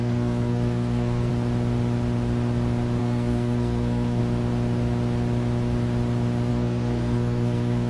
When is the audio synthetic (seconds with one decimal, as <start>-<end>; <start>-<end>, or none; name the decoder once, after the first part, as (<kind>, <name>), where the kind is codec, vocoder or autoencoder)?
0.0-1.3 (codec, SNAC); 3.0-4.2; 6.5-7.9